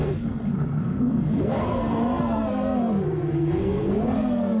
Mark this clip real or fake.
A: fake